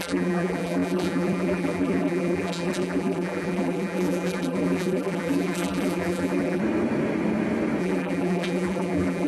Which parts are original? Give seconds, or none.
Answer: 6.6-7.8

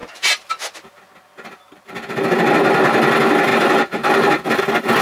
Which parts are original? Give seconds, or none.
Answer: 0.5-3.5; 4.6-5.0

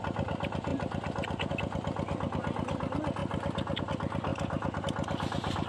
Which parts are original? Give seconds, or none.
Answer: 0.0-5.7

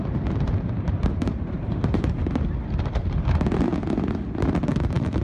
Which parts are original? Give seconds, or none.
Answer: 3.7-4.4

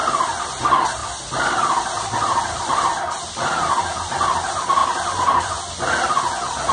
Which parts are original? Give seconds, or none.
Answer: 0.0-1.0; 2.9-4.8; 5.5-6.7